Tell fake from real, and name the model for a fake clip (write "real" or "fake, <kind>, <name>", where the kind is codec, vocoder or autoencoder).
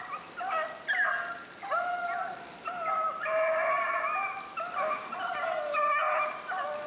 real